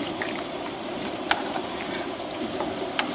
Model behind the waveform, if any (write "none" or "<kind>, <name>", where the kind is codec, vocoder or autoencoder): none